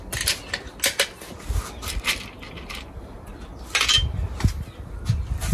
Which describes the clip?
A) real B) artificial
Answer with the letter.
A